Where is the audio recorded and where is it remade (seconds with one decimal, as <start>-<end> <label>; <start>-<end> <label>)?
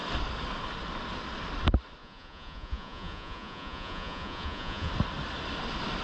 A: 0.0-2.0 recorded; 2.0-4.9 remade; 4.9-6.0 recorded